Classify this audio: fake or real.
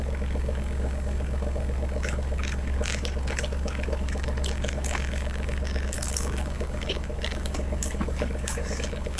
fake